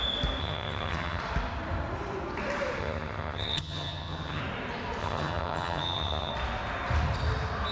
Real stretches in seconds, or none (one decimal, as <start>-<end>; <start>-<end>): 0.0-0.4; 1.2-2.8; 4.4-5.0; 6.3-7.7

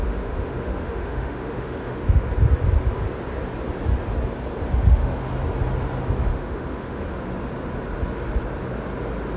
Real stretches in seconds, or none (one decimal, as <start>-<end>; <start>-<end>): 2.3-4.8; 5.3-6.3; 7.0-9.4

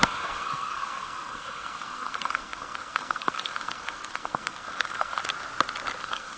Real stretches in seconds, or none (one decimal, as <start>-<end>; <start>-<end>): 5.2-6.0

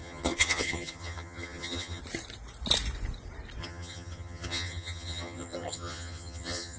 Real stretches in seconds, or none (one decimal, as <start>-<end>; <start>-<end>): 2.0-3.6

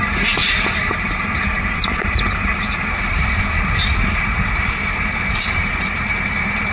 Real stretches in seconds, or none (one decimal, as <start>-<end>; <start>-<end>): none

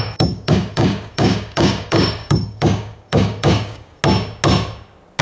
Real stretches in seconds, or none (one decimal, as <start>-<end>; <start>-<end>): 4.0-5.2